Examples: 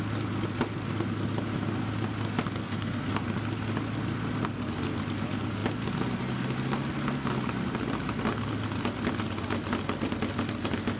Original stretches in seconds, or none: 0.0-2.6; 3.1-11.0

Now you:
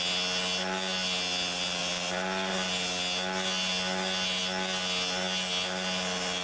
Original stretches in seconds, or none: 0.0-6.4